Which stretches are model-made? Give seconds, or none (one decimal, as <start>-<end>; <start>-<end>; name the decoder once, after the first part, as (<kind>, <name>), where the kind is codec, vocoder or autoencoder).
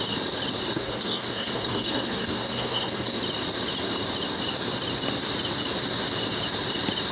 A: 0.7-3.2 (codec, SNAC)